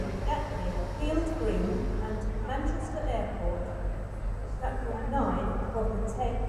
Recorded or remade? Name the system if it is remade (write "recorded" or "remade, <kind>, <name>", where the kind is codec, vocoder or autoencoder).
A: recorded